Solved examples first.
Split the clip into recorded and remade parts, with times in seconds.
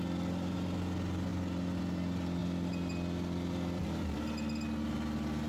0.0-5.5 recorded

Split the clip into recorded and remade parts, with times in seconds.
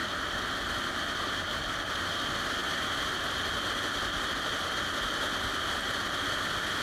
0.0-6.8 recorded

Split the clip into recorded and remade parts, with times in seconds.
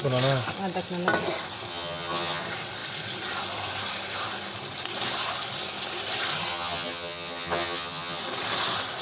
0.0-1.7 recorded; 1.7-2.4 remade; 2.4-6.5 recorded; 6.5-8.2 remade; 8.2-9.0 recorded